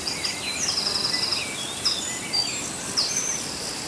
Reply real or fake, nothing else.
fake